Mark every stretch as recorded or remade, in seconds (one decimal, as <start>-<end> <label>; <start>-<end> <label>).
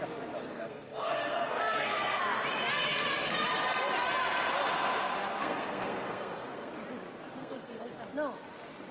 0.0-0.4 recorded; 0.4-2.2 remade; 2.2-5.4 recorded; 5.4-6.7 remade; 6.7-7.4 recorded; 7.4-7.9 remade; 7.9-8.9 recorded